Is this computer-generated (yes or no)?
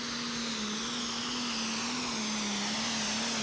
no